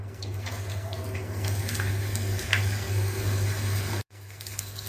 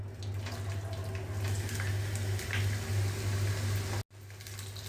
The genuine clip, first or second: second